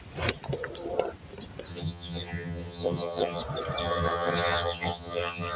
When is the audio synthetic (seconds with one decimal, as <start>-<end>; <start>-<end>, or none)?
1.7-3.4; 3.8-5.6